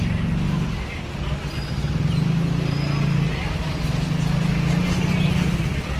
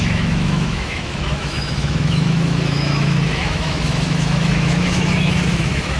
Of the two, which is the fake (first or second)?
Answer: second